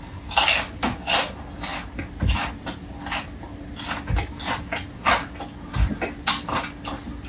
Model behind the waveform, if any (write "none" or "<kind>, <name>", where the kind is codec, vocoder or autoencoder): none